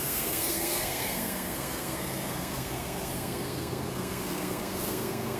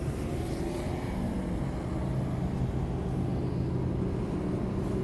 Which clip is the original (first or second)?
second